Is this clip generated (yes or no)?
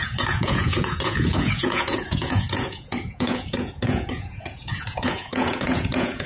yes